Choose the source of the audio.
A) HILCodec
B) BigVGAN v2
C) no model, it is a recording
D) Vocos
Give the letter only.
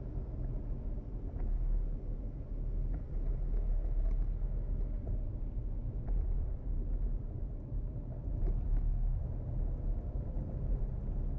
C